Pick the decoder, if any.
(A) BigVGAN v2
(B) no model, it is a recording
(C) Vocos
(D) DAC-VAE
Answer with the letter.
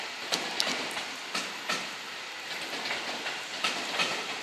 B